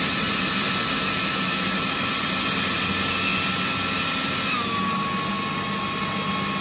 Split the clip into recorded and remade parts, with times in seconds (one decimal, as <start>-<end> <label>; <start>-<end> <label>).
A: 0.0-6.6 recorded